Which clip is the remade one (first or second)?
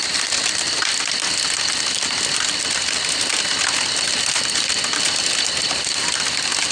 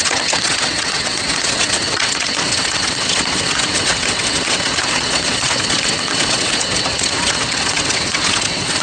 second